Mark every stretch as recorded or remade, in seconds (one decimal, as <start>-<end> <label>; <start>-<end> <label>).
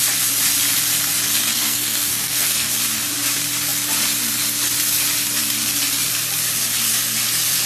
0.0-1.5 recorded; 1.5-2.7 remade; 2.7-7.7 recorded